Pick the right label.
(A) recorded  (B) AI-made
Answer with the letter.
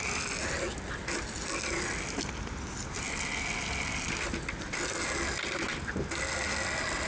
A